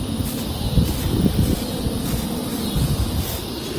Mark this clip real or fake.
real